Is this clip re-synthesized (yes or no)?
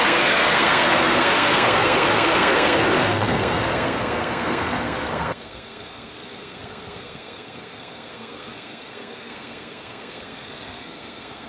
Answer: yes